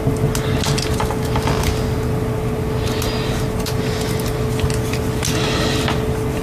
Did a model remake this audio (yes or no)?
no